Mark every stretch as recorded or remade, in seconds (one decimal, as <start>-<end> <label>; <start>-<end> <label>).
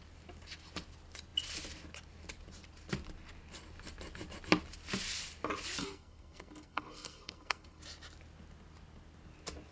0.0-5.8 recorded; 5.8-7.8 remade; 7.8-9.7 recorded